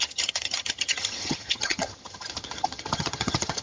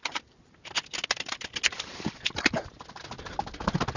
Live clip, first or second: second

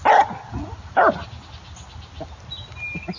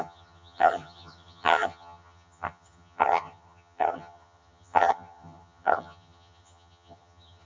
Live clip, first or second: first